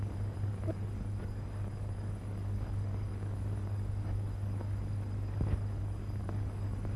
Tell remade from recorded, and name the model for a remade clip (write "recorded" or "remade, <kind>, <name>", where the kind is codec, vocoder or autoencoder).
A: remade, codec, DAC